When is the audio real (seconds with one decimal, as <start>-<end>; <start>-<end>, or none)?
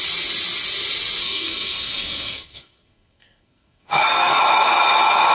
0.0-1.2; 4.4-5.3